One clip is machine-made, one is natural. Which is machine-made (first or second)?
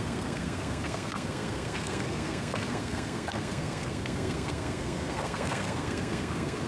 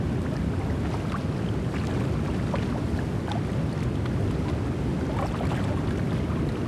first